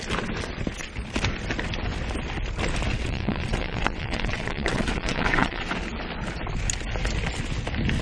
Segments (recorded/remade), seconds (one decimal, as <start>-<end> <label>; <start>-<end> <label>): 0.0-2.9 recorded; 2.9-5.6 remade; 5.6-8.0 recorded